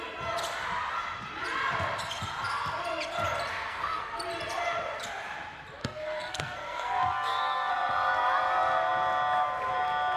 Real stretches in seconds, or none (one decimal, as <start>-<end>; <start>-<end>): 0.0-3.5; 4.1-5.8; 7.7-10.2